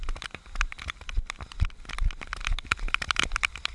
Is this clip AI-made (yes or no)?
no